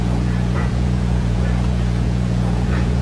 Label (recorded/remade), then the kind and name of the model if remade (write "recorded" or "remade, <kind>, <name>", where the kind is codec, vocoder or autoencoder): remade, vocoder, Vocos